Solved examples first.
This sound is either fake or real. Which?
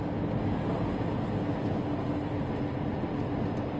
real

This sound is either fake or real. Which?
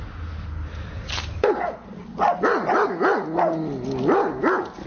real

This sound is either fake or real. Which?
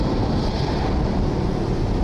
real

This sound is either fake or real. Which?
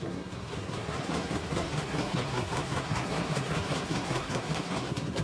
fake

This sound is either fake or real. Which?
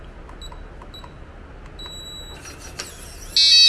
real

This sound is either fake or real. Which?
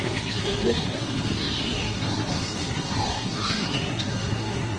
fake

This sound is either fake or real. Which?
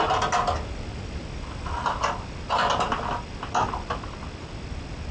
real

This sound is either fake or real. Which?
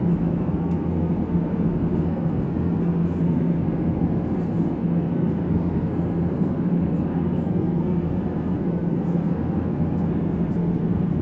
fake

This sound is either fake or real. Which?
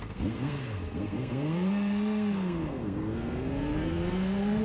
fake